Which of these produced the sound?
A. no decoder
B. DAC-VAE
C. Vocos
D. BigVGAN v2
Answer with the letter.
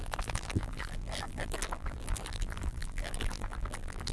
D